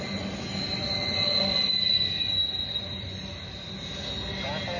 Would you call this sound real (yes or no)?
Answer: yes